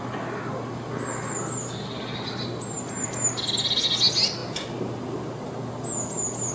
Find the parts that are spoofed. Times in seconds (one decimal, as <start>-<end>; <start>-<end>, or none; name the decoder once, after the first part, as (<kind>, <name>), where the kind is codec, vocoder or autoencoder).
none